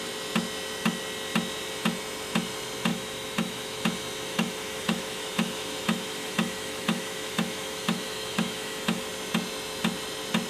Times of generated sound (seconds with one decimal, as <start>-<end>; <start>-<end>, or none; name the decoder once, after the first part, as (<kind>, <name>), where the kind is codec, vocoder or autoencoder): 2.9-3.8 (autoencoder, DAC-VAE); 4.3-9.0